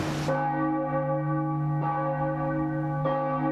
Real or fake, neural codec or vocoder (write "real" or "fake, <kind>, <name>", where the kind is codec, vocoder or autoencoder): real